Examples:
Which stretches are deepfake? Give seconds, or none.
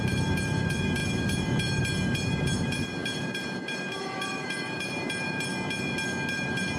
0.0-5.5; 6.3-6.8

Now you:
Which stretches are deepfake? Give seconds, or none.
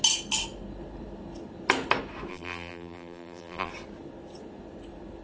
2.3-3.7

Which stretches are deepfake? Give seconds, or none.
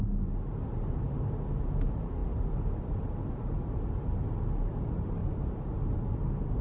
2.2-2.9; 5.2-6.6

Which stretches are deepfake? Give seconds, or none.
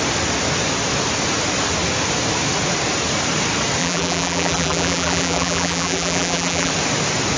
3.8-6.7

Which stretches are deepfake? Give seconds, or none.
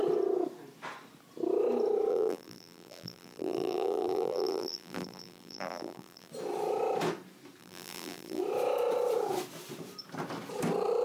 2.1-6.3; 7.6-8.4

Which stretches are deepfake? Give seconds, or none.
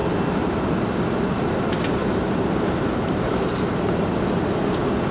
2.0-4.2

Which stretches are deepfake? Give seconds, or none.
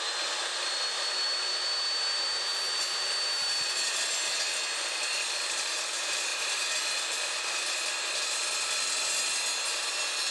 6.3-7.0